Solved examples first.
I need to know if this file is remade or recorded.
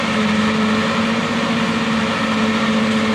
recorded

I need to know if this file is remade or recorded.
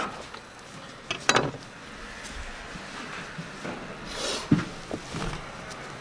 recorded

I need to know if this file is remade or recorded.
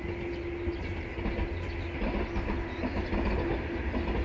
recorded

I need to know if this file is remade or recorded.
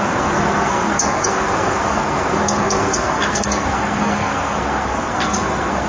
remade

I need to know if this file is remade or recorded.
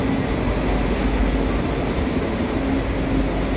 recorded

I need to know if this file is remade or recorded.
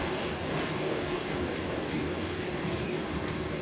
remade